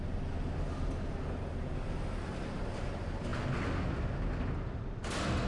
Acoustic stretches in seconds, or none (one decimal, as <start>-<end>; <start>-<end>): 0.0-5.5